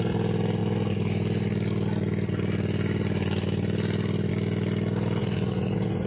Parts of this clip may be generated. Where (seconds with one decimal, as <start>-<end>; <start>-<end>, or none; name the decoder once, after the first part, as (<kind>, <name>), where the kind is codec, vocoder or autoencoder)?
5.2-6.1 (vocoder, Vocos)